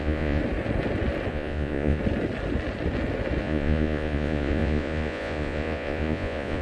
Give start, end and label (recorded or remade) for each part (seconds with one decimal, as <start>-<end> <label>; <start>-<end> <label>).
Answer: 0.0-0.4 remade; 0.4-1.3 recorded; 1.3-2.0 remade; 2.0-3.4 recorded; 3.4-6.6 remade